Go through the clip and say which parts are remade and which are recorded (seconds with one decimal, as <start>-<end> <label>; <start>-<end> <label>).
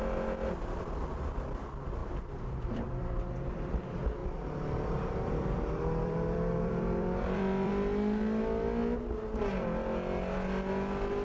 0.0-2.0 recorded; 2.0-3.5 remade; 3.5-4.2 recorded; 4.2-7.7 remade; 7.7-11.2 recorded